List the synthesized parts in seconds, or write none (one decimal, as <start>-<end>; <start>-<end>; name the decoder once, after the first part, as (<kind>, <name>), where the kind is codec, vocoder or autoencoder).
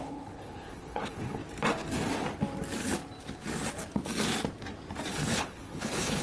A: 0.0-1.4 (codec, HILCodec); 5.1-6.2